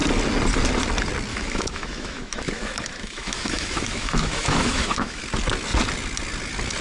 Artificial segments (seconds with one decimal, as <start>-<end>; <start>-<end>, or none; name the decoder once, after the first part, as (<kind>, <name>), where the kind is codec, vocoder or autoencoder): 1.3-5.2 (autoencoder, DAC-VAE)